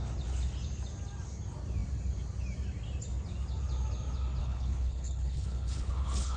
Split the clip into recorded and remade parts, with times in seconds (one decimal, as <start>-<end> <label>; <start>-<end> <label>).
0.0-4.4 recorded; 4.4-6.4 remade